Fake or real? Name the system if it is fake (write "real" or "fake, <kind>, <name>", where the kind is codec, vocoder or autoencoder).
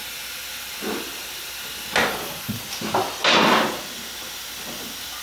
real